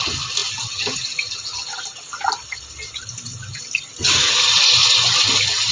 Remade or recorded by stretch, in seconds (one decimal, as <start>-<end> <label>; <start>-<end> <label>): 0.0-5.7 recorded